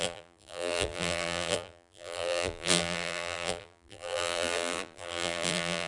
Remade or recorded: remade